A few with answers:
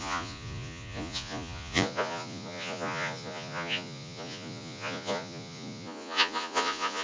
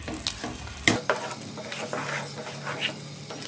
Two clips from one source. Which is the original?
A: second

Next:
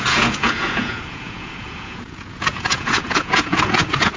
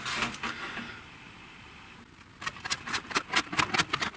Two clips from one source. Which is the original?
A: second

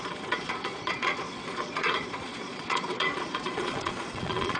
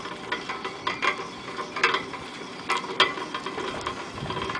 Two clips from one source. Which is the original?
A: second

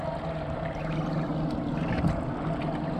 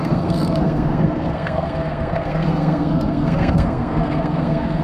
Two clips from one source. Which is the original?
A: first